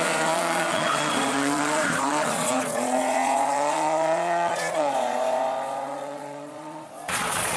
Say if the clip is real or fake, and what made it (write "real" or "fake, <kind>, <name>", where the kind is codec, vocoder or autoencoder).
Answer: fake, vocoder, Vocos